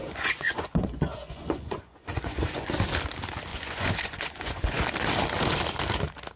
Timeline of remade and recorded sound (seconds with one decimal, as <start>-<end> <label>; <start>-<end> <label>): 0.0-2.7 remade; 2.7-3.5 recorded; 3.5-4.8 remade; 4.8-6.4 recorded